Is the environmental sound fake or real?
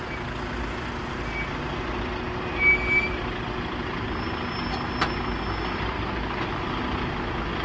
real